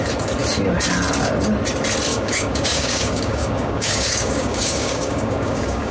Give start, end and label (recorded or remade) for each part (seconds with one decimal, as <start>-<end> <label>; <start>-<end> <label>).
0.0-2.1 recorded; 2.1-5.9 remade